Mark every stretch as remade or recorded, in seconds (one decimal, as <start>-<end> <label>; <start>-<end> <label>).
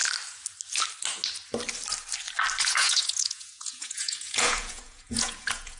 0.0-2.6 recorded; 2.6-5.8 remade